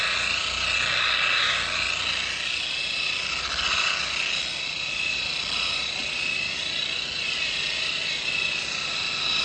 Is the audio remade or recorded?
recorded